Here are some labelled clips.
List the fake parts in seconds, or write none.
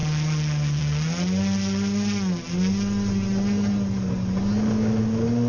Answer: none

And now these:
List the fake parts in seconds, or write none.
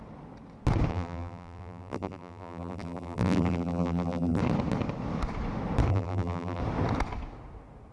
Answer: 0.9-4.4 (vocoder, BigVGAN v2); 5.9-6.6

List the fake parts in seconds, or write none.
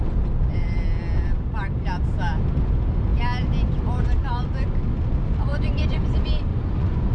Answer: 5.5-6.1 (vocoder, Vocos); 6.5-7.1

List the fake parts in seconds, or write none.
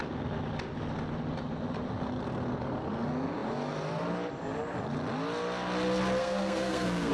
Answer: 6.2-7.1 (codec, SNAC)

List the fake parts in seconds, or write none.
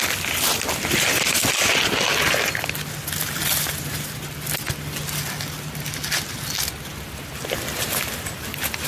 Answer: none